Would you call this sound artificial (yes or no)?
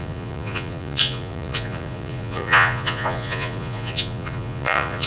yes